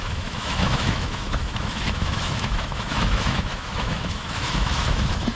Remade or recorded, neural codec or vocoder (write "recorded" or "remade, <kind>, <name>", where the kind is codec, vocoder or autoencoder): remade, autoencoder, DAC-VAE